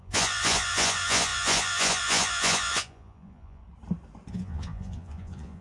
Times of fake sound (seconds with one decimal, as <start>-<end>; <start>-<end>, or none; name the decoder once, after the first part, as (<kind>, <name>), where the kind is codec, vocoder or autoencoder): 0.0-3.6 (vocoder, Vocos); 4.3-5.6